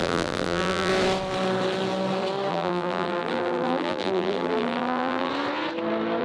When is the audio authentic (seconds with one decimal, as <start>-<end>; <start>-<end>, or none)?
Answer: 0.9-2.5; 5.3-6.2